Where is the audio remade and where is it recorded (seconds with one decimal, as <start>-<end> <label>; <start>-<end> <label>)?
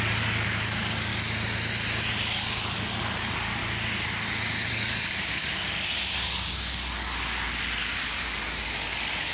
0.0-1.1 remade; 1.1-2.2 recorded; 2.2-3.6 remade; 3.6-4.7 recorded; 4.7-9.3 remade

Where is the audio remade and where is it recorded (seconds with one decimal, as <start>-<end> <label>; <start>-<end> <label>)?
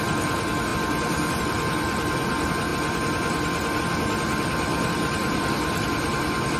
0.0-4.7 recorded; 4.7-6.0 remade; 6.0-6.6 recorded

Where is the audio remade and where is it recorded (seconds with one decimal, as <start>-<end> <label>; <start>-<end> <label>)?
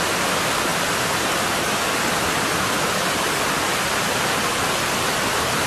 0.0-5.7 recorded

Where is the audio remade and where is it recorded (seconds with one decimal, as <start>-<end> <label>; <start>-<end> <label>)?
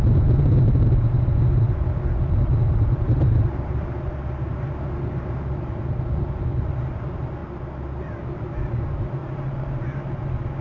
0.0-2.6 recorded; 2.6-4.1 remade; 4.1-7.4 recorded; 7.4-8.1 remade; 8.1-10.6 recorded